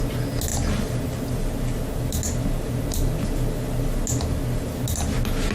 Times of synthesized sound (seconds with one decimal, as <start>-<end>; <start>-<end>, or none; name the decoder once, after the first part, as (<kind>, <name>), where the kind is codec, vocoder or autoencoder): none